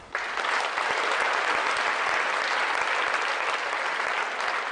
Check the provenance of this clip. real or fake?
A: real